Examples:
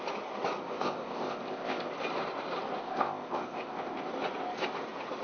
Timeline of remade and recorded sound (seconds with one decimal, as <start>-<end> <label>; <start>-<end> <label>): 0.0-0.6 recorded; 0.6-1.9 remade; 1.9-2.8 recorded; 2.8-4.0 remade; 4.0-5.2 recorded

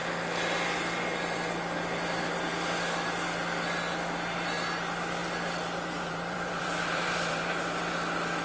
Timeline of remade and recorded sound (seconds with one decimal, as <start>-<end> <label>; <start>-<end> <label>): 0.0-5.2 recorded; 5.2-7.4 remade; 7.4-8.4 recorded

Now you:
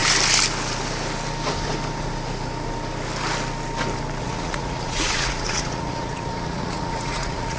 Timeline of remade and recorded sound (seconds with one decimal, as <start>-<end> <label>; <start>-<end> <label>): 0.0-4.2 recorded; 4.2-7.6 remade

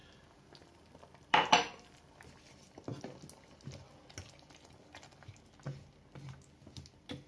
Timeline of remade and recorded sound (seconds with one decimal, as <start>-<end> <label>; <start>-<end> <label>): 0.0-7.3 recorded

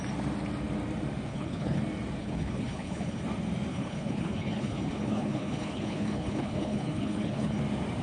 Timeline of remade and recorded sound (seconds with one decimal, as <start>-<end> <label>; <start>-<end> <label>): 0.0-1.3 recorded; 1.3-1.8 remade; 1.8-2.2 recorded; 2.2-3.2 remade; 3.2-3.7 recorded; 3.7-7.6 remade; 7.6-8.0 recorded

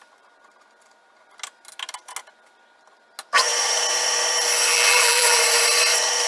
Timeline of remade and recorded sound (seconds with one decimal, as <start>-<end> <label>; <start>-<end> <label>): 0.0-4.7 recorded; 4.7-5.4 remade; 5.4-6.3 recorded

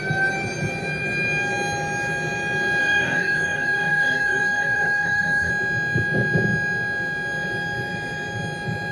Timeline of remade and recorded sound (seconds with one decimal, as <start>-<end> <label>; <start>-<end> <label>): 0.0-2.8 recorded; 2.8-5.5 remade; 5.5-8.9 recorded